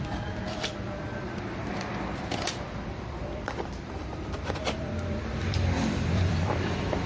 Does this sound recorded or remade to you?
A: remade